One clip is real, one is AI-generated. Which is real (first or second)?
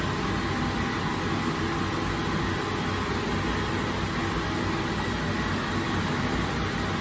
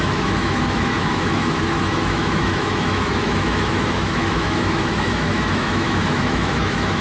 first